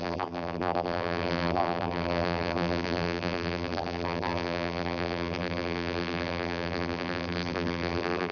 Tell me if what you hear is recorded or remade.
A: remade